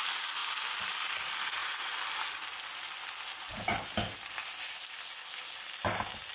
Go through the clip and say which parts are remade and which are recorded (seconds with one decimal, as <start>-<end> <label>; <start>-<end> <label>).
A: 0.0-6.3 recorded